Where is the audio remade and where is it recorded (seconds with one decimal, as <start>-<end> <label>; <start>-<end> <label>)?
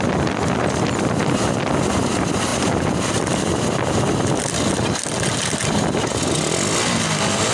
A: 0.0-7.5 recorded